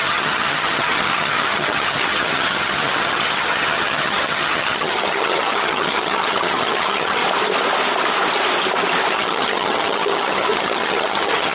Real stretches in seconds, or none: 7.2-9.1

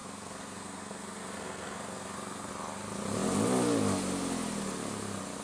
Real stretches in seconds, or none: 2.5-5.4

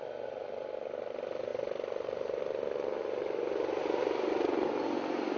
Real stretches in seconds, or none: 0.0-5.4

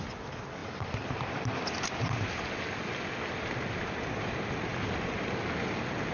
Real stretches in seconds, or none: 0.0-6.1

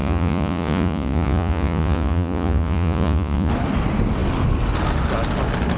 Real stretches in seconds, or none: 3.5-5.8

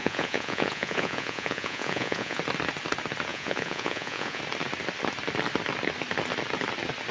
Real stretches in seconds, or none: 2.4-3.3; 4.4-7.1

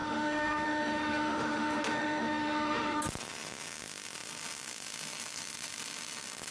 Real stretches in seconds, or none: 3.0-6.5

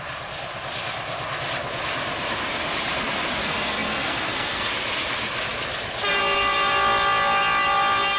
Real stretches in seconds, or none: 0.0-3.4; 4.7-8.2